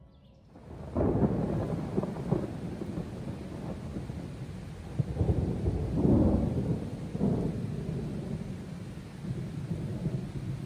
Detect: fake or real real